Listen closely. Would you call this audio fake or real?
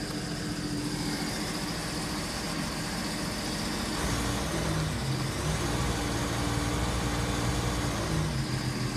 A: real